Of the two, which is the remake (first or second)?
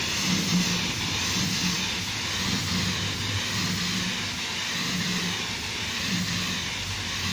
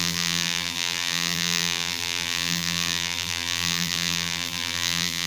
second